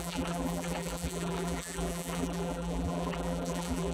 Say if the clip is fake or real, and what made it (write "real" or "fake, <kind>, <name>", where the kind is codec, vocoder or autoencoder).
fake, vocoder, BigVGAN v2